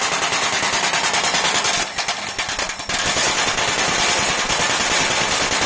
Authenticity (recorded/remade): recorded